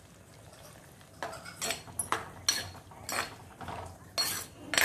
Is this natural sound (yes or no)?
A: yes